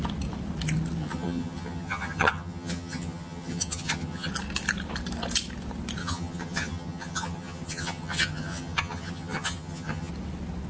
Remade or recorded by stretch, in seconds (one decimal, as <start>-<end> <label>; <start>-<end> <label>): 0.0-1.0 recorded; 1.0-4.3 remade; 4.3-6.0 recorded; 6.0-10.1 remade; 10.1-10.7 recorded